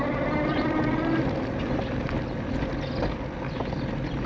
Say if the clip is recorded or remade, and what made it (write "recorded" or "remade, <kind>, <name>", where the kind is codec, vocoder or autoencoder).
recorded